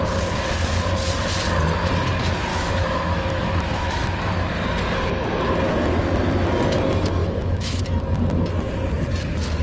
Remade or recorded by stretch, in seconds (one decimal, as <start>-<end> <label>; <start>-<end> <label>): 0.0-2.5 recorded; 2.5-4.3 remade; 4.3-7.2 recorded; 7.2-7.8 remade; 7.8-9.6 recorded